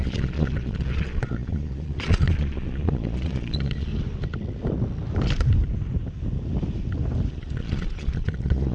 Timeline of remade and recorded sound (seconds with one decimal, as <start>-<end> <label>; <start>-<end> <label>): 0.0-3.9 remade; 3.9-7.3 recorded; 7.3-8.7 remade